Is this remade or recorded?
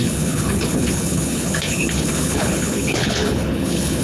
remade